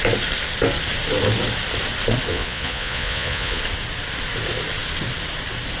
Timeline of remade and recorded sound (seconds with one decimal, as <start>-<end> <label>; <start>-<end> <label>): 0.0-2.3 recorded; 2.3-3.6 remade; 3.6-5.8 recorded

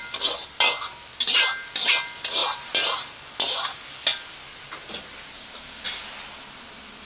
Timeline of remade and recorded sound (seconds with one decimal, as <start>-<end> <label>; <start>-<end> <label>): 0.0-7.1 recorded

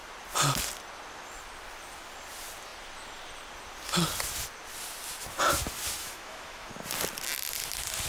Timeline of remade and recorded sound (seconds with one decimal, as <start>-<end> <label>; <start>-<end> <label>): 0.0-6.0 recorded; 6.0-6.7 remade; 6.7-8.1 recorded

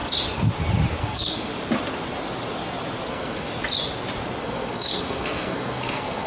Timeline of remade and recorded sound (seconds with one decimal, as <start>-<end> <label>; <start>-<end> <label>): 0.0-1.0 recorded; 1.0-1.5 remade; 1.5-3.1 recorded; 3.1-3.5 remade; 3.5-4.4 recorded; 4.4-6.3 remade

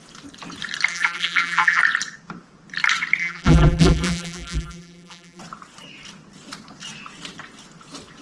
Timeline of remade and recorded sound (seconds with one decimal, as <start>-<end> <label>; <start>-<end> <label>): 0.0-0.9 recorded; 0.9-1.8 remade; 1.8-3.2 recorded; 3.2-5.4 remade; 5.4-8.2 recorded